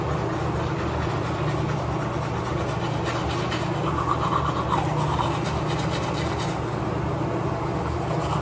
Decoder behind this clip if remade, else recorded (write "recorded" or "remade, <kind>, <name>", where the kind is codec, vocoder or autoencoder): recorded